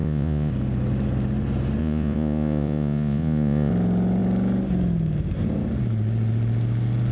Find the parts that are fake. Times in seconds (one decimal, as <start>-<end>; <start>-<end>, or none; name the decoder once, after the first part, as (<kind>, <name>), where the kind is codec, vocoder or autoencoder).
0.0-0.5 (vocoder, Vocos); 1.8-3.7